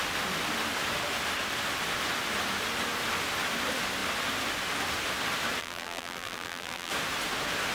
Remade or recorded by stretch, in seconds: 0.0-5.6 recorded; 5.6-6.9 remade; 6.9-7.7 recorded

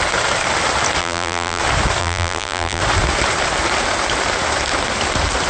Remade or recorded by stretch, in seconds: 0.0-1.0 recorded; 1.0-1.6 remade; 1.6-2.0 recorded; 2.0-2.8 remade; 2.8-5.5 recorded